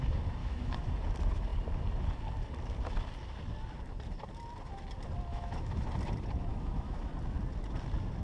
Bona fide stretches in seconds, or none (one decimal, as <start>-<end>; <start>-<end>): 0.0-0.4; 0.9-5.3; 5.9-6.5; 7.1-8.2